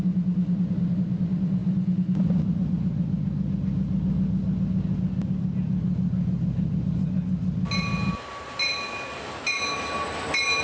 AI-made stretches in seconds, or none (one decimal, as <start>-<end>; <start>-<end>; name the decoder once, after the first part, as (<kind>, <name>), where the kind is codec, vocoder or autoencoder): none